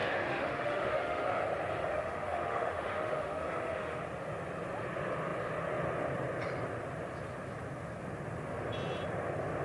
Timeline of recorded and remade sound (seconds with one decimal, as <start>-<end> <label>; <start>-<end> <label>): 0.0-1.4 remade; 1.4-1.9 recorded; 1.9-4.0 remade; 4.0-9.6 recorded